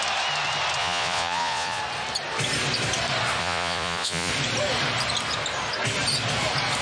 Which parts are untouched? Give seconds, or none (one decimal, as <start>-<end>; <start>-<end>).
0.0-0.8; 1.8-3.4; 4.3-6.8